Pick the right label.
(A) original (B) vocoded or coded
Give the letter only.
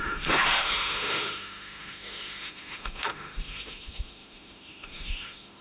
B